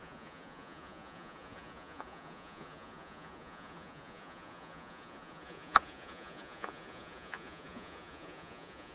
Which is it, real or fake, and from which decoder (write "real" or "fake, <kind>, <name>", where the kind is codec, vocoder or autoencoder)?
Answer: fake, vocoder, Vocos